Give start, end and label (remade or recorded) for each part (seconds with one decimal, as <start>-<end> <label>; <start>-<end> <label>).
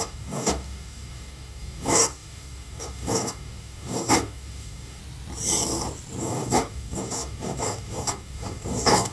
0.0-5.0 remade; 5.0-6.2 recorded; 6.2-9.1 remade